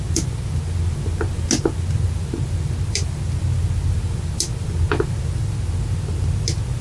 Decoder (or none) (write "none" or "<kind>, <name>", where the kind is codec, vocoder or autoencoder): none